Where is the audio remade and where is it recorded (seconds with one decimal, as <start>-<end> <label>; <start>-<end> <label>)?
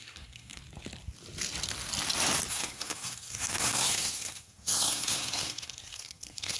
0.0-0.6 remade; 0.6-2.5 recorded; 2.5-6.6 remade